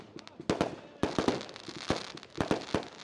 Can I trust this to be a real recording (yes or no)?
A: yes